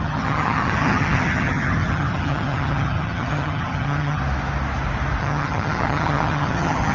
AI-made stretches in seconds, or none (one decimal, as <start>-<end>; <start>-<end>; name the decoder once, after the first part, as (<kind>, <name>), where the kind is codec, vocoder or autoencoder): 0.0-4.2 (vocoder, HiFi-GAN); 5.2-6.9